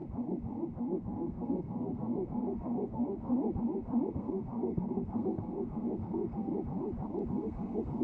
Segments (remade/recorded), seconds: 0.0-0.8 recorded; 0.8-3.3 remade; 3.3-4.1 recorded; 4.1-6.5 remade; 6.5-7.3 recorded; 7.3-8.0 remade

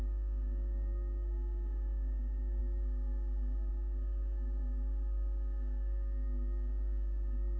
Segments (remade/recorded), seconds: 0.0-7.6 remade

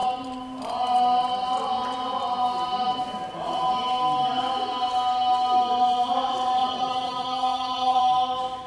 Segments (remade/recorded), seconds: 0.0-6.6 recorded; 6.6-8.0 remade; 8.0-8.7 recorded

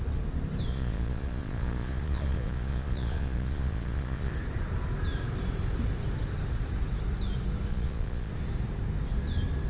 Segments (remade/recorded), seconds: 0.0-0.7 recorded; 0.7-4.3 remade; 4.3-7.7 recorded; 7.7-8.3 remade; 8.3-9.7 recorded

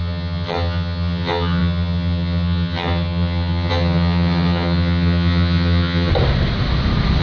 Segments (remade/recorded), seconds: 0.0-6.1 remade; 6.1-7.2 recorded

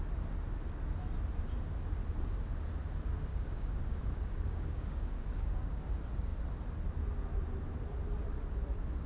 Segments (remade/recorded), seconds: 0.0-3.3 recorded; 3.3-5.8 remade; 5.8-9.1 recorded

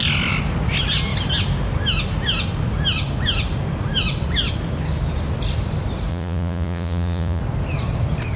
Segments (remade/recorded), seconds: 0.0-6.1 recorded; 6.1-7.4 remade; 7.4-8.4 recorded